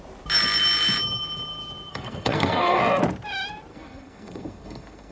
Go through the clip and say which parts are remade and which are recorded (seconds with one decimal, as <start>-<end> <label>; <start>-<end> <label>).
0.0-1.9 recorded; 1.9-2.8 remade; 2.8-3.7 recorded; 3.7-5.1 remade